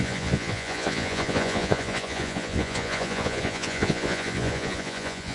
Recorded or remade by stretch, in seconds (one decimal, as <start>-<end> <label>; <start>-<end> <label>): 0.0-5.3 remade